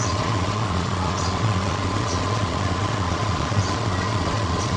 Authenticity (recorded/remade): remade